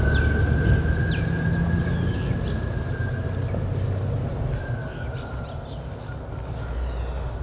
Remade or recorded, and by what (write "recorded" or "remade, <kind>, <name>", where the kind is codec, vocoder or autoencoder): recorded